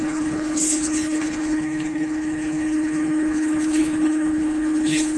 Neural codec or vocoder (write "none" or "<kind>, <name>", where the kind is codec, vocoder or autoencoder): codec, HILCodec